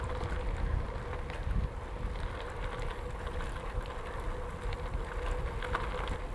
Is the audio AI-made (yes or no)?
no